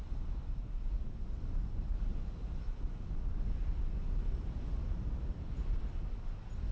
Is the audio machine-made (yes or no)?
no